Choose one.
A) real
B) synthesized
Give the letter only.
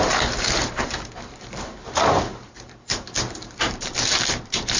B